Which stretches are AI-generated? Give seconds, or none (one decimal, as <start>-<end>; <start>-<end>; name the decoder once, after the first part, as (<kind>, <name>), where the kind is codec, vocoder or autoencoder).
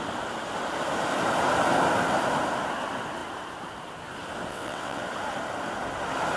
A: 4.5-5.0 (vocoder, WaveNeXt)